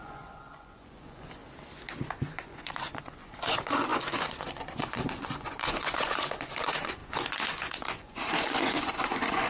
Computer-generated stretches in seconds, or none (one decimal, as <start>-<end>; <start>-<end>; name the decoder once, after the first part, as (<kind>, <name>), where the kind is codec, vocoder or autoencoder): 0.0-1.4 (vocoder, Vocos); 2.0-9.5